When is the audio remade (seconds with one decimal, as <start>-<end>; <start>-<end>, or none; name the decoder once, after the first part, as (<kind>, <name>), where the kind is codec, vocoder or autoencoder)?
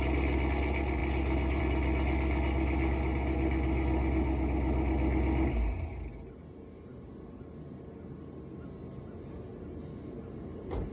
none